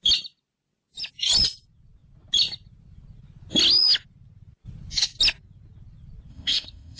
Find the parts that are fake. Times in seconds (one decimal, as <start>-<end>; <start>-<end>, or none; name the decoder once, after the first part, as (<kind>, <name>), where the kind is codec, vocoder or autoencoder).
6.3-7.0 (codec, ZipCodec)